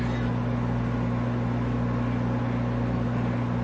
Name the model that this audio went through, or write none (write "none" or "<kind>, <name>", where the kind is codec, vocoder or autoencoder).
none